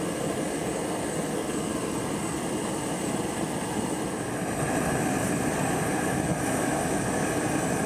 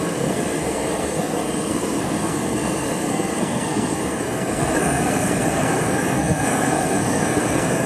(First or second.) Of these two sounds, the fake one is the second